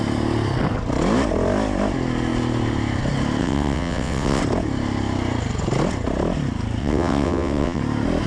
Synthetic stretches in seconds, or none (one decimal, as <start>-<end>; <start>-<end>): 3.4-4.4; 6.8-7.8